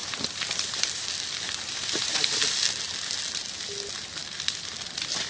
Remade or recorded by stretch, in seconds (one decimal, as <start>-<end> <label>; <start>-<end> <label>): 0.0-5.3 recorded